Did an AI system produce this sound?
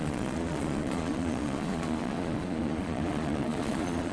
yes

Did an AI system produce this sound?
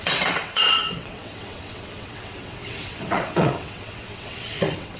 yes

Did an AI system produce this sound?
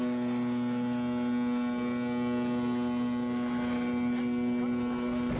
no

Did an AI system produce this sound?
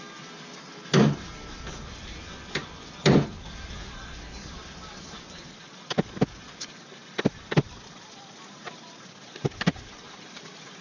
no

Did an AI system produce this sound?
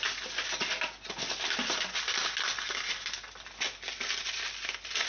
no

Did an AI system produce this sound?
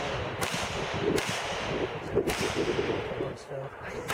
no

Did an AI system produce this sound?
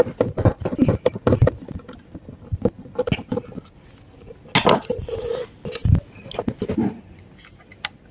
no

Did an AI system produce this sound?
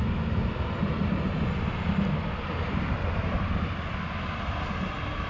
no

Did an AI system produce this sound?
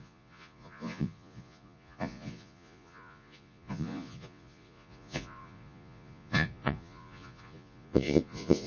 yes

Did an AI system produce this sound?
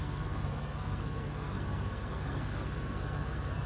yes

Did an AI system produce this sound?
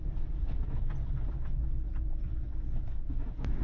no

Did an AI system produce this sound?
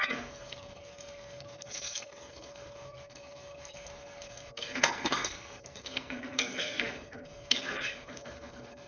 yes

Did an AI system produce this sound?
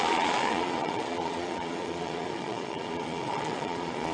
yes